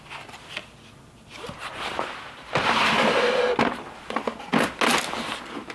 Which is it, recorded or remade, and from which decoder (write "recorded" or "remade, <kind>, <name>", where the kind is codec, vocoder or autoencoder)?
recorded